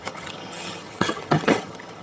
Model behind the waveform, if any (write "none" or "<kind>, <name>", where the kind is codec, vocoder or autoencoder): vocoder, HiFi-GAN